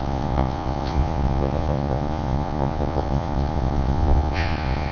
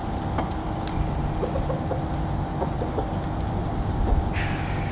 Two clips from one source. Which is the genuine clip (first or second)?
second